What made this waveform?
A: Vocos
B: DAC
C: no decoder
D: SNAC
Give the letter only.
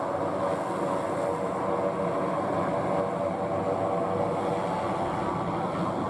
C